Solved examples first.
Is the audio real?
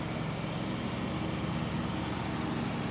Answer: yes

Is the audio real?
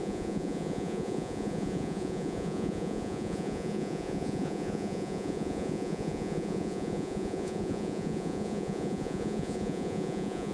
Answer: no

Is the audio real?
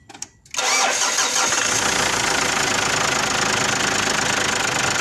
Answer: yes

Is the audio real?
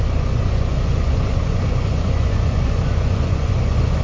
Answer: no